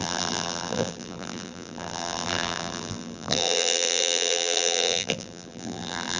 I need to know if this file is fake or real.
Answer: fake